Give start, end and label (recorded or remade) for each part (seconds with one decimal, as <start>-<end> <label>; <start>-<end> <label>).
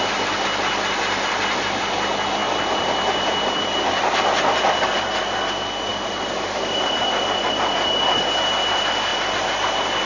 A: 0.0-2.4 recorded; 2.4-3.9 remade; 3.9-5.9 recorded; 5.9-7.1 remade; 7.1-9.1 recorded; 9.1-10.1 remade